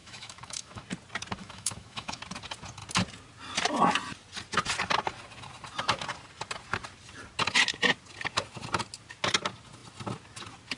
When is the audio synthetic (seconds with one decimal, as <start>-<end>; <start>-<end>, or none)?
0.0-0.8; 1.4-2.2